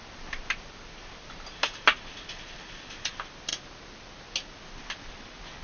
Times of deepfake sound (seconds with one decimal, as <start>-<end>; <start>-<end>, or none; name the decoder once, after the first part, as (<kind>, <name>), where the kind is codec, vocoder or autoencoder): none